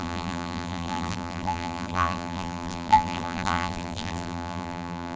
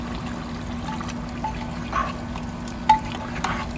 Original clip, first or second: second